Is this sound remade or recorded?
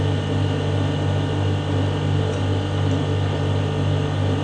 recorded